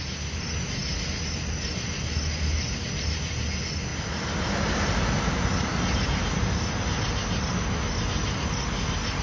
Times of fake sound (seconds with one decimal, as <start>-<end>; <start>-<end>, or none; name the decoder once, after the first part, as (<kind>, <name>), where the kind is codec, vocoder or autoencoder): none